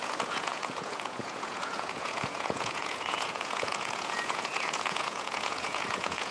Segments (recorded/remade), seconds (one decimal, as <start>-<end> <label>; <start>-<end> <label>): 0.0-6.3 remade